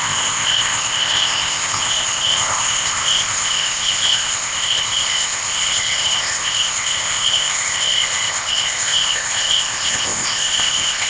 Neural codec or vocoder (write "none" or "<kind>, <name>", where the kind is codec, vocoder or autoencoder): codec, ZipCodec